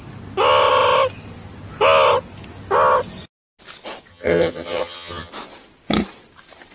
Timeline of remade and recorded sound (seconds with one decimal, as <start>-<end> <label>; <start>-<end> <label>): 0.0-4.1 recorded; 4.1-5.3 remade; 5.3-6.7 recorded